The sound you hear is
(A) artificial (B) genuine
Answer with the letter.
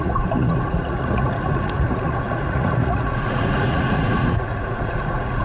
A